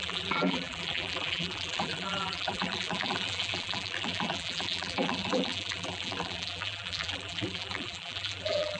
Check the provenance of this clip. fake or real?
fake